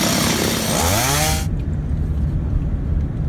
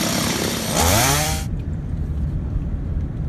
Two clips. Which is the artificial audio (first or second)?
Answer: second